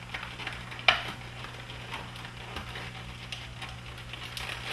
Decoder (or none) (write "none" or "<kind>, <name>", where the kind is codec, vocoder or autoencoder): none